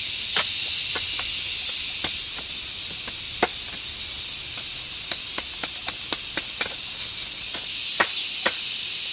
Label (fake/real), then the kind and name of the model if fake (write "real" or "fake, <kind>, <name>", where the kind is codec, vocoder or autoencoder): real